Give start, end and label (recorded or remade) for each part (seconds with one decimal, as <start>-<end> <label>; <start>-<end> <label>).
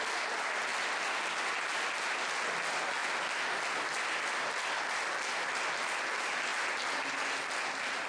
0.0-8.1 recorded